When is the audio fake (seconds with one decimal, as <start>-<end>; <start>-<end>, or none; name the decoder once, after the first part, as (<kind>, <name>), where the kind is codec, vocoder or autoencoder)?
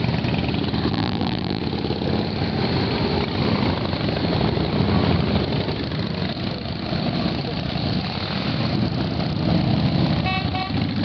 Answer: 0.9-1.6 (vocoder, BigVGAN v2)